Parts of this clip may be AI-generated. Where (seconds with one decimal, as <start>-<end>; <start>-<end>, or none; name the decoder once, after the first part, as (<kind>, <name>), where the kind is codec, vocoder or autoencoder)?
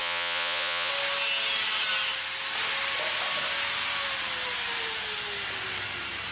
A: 0.0-0.9 (vocoder, Vocos)